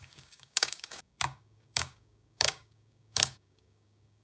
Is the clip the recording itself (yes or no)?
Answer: no